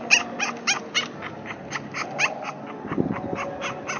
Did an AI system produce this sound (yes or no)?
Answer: no